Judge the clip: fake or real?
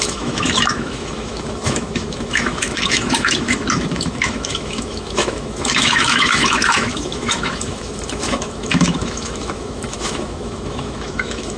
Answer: fake